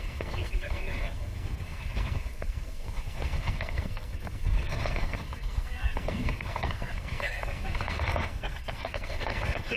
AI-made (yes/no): yes